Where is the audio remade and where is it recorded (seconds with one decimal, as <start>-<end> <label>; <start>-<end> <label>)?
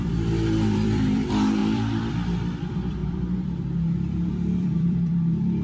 0.0-5.6 remade